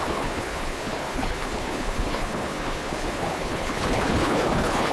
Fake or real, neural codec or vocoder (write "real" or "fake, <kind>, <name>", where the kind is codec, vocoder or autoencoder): fake, codec, HILCodec